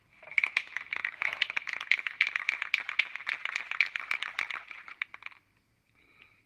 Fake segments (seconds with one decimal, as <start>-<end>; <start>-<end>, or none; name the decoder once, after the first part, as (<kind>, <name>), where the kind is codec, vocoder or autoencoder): none